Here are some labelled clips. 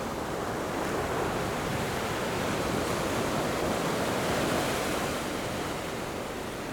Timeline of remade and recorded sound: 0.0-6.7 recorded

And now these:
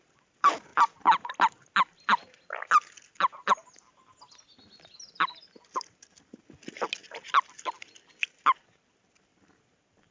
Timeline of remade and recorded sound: 0.0-10.1 recorded

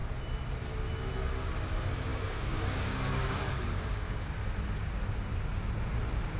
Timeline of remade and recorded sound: 0.0-2.1 recorded; 2.1-4.3 remade; 4.3-6.4 recorded

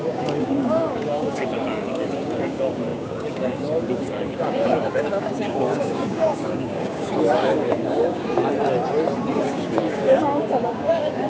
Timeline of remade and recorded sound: 0.0-8.4 remade; 8.4-9.3 recorded; 9.3-11.3 remade

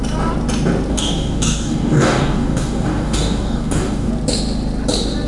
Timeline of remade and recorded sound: 0.0-0.9 recorded; 0.9-4.1 remade; 4.1-5.3 recorded

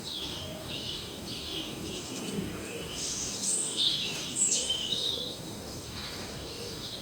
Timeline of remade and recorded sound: 0.0-7.0 remade

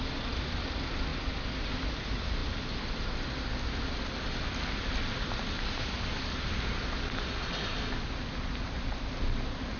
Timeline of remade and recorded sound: 0.0-9.8 recorded

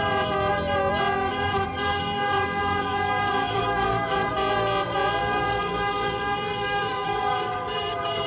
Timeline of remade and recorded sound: 0.0-1.3 recorded; 1.3-4.3 remade; 4.3-5.2 recorded; 5.2-8.3 remade